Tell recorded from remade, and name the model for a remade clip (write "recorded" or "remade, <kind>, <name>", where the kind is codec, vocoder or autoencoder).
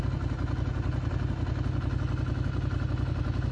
recorded